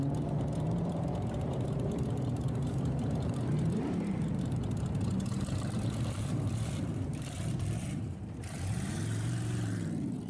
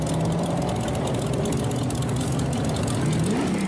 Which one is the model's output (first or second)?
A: first